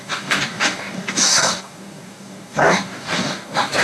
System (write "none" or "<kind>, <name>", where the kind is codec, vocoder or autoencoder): codec, DAC